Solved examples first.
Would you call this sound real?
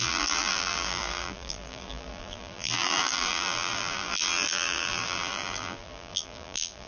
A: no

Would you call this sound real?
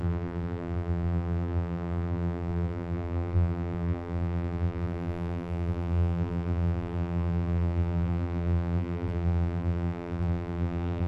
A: no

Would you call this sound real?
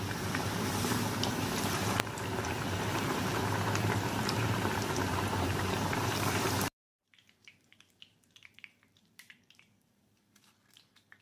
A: no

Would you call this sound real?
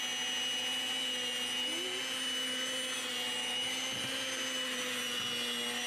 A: yes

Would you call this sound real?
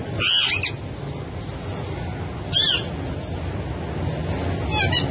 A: yes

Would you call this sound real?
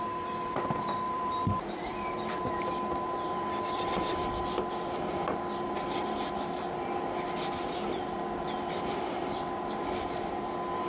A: no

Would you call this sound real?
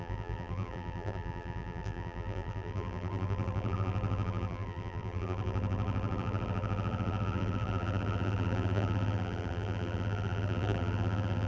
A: no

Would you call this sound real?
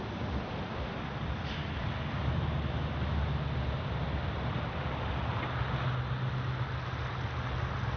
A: yes